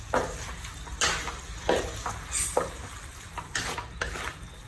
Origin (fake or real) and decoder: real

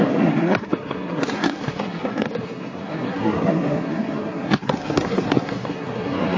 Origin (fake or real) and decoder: fake, codec, SNAC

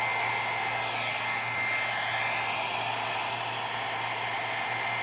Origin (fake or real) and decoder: real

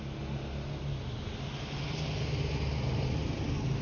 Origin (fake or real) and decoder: real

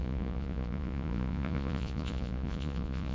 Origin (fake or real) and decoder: fake, vocoder, Vocos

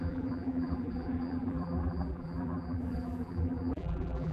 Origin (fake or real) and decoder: fake, vocoder, BigVGAN v2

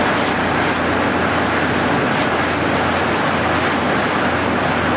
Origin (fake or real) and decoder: real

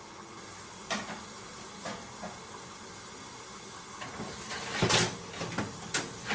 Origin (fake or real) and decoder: real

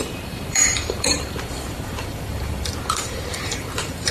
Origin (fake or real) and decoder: fake, vocoder, BigVGAN v2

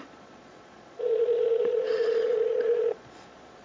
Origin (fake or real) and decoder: fake, vocoder, Vocos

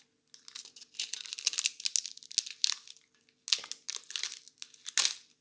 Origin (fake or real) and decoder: real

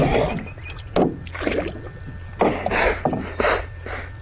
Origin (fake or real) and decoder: real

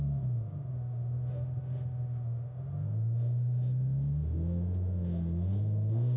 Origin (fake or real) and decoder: fake, autoencoder, DAC-VAE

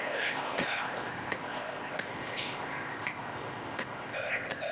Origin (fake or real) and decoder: fake, codec, ZipCodec